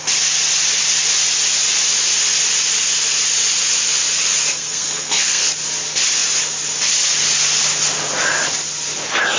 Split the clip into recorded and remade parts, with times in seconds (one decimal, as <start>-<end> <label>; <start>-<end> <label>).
0.0-4.5 recorded; 4.5-5.5 remade; 5.5-9.4 recorded